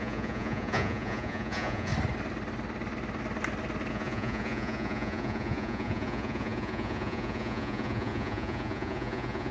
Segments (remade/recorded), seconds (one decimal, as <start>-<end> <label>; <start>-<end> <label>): 0.0-1.9 remade; 1.9-3.9 recorded; 3.9-9.5 remade